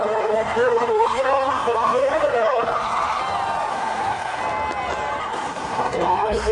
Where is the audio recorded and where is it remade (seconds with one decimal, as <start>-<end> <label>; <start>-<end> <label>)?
0.0-3.2 remade; 3.2-3.7 recorded; 3.7-4.4 remade; 4.4-5.2 recorded; 5.2-6.5 remade